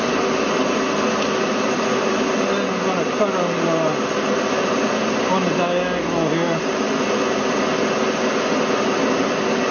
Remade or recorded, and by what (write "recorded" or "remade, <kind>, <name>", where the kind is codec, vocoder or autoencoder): recorded